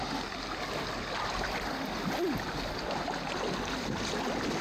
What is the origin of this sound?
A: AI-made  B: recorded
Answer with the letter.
B